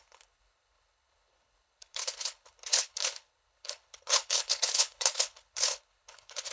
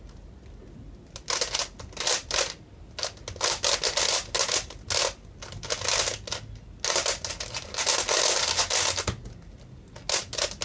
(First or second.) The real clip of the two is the second